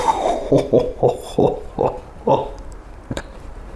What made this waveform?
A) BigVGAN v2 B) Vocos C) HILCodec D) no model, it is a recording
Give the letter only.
A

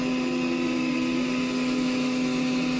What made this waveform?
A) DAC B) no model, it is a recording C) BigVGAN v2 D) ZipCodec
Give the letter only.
B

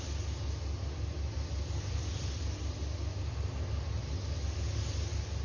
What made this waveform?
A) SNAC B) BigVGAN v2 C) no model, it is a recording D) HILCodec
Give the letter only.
C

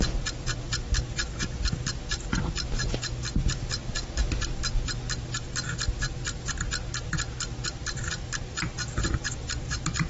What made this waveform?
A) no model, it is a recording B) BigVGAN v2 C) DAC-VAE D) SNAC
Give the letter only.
A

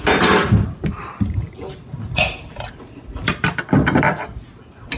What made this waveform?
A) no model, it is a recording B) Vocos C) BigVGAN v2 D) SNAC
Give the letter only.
A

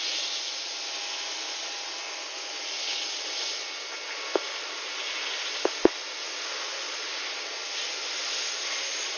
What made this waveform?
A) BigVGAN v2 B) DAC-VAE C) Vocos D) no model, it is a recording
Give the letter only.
D